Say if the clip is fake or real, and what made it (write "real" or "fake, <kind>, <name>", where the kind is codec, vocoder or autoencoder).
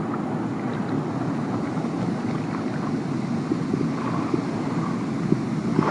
real